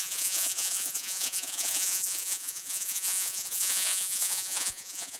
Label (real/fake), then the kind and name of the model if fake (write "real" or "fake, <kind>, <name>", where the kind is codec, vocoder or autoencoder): fake, vocoder, Vocos